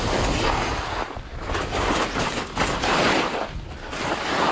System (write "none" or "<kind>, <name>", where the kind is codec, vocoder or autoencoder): none